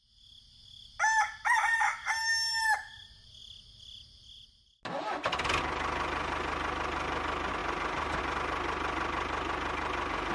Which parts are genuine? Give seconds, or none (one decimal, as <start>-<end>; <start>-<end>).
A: 0.0-10.3